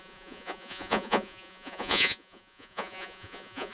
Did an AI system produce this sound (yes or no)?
yes